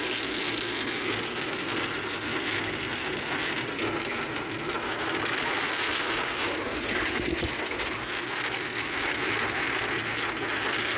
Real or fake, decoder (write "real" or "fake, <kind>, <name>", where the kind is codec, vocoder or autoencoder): real